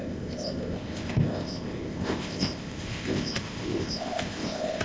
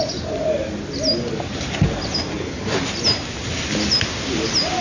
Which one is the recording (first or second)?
second